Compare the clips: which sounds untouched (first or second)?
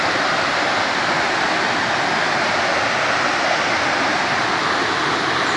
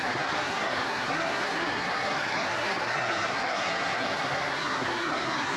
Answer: first